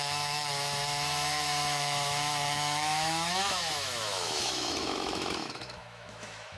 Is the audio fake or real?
fake